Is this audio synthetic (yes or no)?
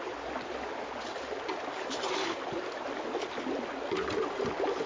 no